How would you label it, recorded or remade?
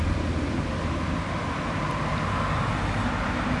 recorded